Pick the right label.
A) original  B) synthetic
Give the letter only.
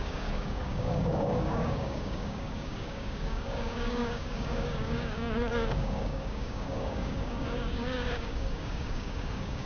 B